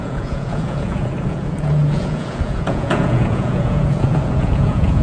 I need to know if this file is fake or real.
fake